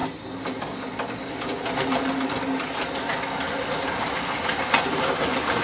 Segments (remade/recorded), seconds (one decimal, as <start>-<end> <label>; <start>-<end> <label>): 0.0-5.6 recorded